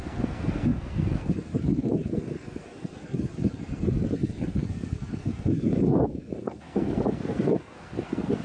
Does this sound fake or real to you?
fake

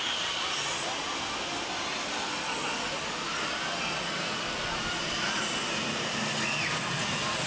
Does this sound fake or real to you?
real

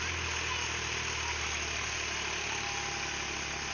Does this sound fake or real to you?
real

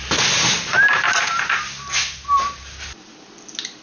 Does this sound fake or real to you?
real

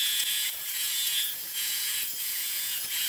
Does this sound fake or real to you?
fake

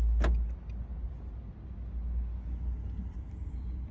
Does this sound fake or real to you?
real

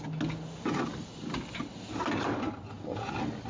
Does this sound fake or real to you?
real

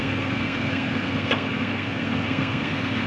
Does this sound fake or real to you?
fake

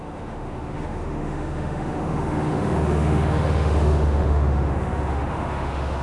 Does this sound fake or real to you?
fake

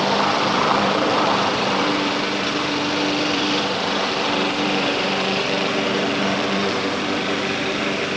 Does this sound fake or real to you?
fake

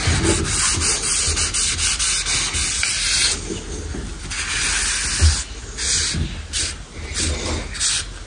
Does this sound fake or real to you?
real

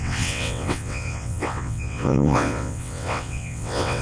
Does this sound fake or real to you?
fake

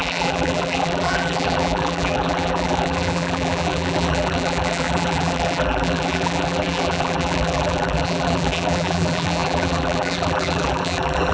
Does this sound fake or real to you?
fake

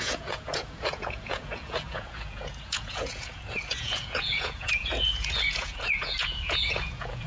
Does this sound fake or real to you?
fake